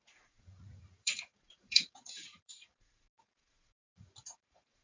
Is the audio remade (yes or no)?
yes